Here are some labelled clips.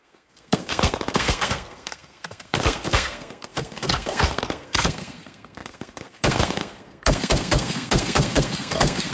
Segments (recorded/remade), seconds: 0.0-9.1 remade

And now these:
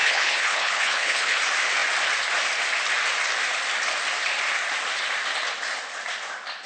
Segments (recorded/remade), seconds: 0.0-1.4 remade; 1.4-6.7 recorded